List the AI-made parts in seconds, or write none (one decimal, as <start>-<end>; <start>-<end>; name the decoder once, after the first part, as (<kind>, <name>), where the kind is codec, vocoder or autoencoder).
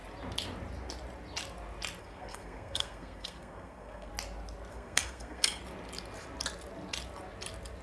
2.0-4.1 (codec, SNAC); 4.7-5.6